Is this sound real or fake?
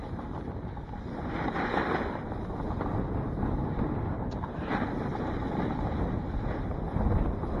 real